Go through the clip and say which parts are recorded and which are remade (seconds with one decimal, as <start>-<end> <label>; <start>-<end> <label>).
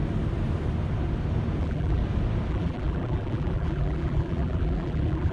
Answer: 0.0-1.6 recorded; 1.6-2.0 remade; 2.0-2.5 recorded; 2.5-5.3 remade